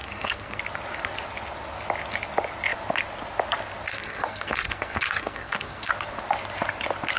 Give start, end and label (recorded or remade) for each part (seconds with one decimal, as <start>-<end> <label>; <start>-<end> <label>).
0.0-0.6 remade; 0.6-3.9 recorded; 3.9-5.9 remade; 5.9-7.2 recorded